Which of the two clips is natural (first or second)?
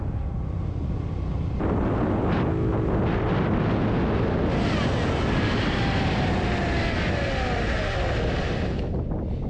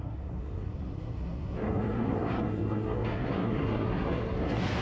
first